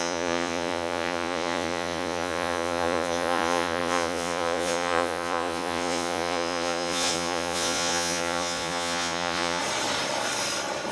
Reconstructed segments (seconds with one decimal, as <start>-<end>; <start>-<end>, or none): 0.0-9.6